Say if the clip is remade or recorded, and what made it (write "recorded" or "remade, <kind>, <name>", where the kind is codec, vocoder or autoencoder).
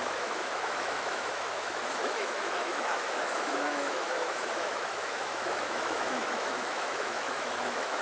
remade, autoencoder, DAC-VAE